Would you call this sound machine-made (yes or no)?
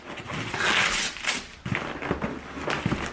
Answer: no